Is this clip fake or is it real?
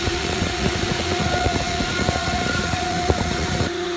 fake